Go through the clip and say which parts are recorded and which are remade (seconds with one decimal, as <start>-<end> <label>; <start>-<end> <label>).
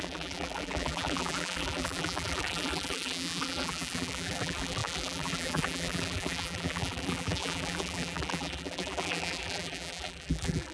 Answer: 0.0-10.7 remade